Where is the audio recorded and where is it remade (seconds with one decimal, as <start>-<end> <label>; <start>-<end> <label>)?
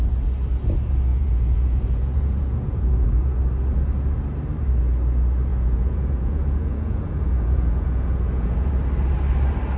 0.0-1.1 recorded; 1.1-3.4 remade; 3.4-5.5 recorded; 5.5-8.7 remade; 8.7-9.8 recorded